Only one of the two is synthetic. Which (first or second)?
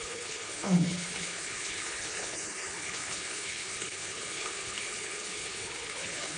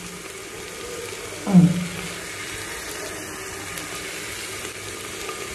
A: first